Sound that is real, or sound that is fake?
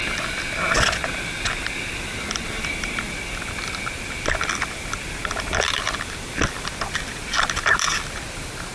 real